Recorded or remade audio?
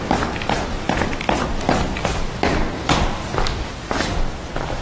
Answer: recorded